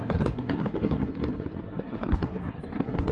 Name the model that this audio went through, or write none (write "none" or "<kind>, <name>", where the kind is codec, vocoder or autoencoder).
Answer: codec, SNAC